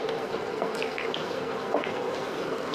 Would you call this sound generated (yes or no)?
yes